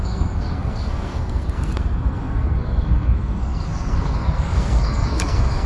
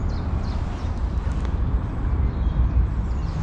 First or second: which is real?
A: second